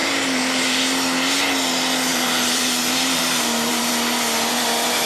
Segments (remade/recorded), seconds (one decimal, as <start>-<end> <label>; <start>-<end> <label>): 0.0-0.8 remade; 0.8-2.1 recorded; 2.1-3.9 remade; 3.9-5.1 recorded